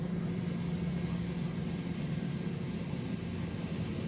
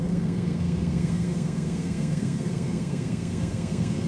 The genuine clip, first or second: first